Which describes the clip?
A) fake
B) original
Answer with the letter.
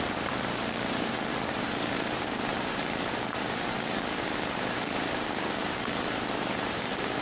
A